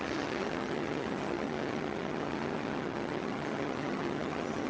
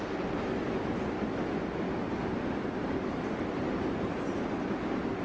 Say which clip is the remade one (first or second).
first